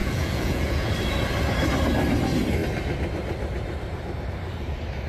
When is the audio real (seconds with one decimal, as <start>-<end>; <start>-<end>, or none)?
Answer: 0.9-5.1

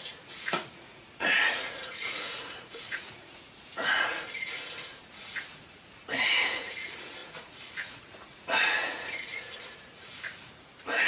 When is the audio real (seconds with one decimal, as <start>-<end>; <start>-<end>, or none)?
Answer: none

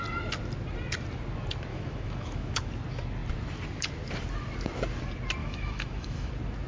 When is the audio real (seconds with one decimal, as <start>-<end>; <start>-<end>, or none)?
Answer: 0.0-1.7; 2.7-5.4; 6.3-6.7